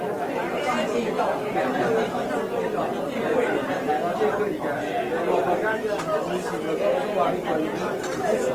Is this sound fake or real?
real